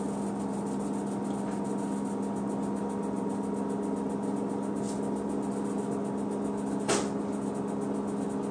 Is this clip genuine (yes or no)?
yes